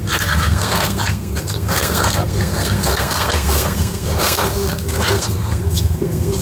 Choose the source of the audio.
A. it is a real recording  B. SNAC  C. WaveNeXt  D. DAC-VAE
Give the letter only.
B